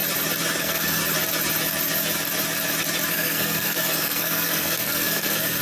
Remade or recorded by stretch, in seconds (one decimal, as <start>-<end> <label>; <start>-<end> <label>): 0.0-0.6 recorded; 0.6-1.0 remade; 1.0-3.1 recorded; 3.1-5.6 remade